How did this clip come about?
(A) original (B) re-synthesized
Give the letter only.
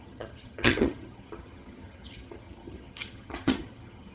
B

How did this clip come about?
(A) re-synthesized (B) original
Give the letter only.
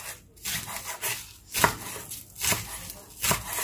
B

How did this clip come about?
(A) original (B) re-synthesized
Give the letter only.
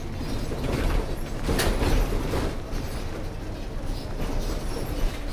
A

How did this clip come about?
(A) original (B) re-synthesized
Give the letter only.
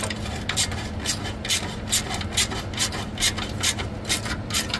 A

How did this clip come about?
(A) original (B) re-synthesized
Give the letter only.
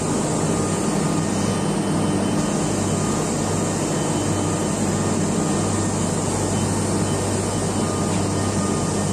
A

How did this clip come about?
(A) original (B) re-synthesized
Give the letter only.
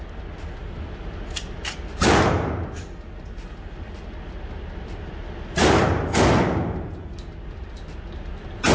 A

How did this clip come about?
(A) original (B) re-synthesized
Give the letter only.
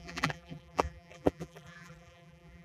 B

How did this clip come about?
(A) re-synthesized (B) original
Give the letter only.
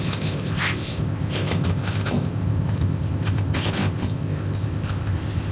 A